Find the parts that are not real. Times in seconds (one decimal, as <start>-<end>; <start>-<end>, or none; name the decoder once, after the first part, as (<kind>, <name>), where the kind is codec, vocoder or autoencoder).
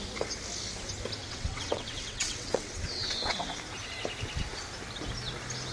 1.2-3.5 (vocoder, WaveNeXt)